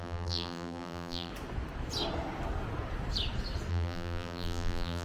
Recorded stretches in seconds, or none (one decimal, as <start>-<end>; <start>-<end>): 1.3-3.7

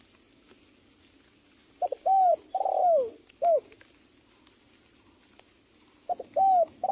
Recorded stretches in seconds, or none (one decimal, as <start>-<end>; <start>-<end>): 0.0-1.6; 2.8-6.9

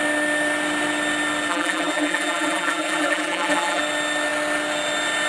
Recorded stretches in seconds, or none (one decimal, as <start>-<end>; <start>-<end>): 0.0-1.5; 3.8-5.3

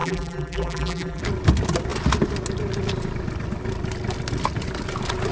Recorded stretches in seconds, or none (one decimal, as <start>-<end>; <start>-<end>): 1.2-5.3